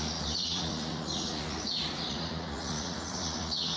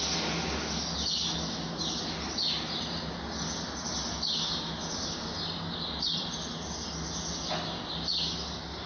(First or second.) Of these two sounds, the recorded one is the second